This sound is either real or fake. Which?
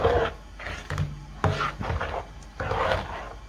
real